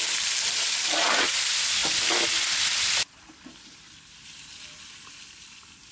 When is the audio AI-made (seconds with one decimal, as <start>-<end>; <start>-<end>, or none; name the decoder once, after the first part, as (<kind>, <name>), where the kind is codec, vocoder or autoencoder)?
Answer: none

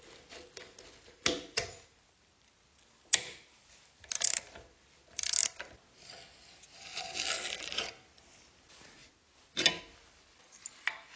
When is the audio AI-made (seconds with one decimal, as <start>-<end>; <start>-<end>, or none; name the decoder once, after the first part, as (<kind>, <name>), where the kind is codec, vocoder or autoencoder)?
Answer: none